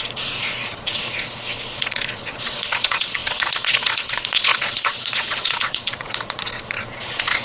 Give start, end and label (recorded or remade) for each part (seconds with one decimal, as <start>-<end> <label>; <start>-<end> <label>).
0.0-7.4 remade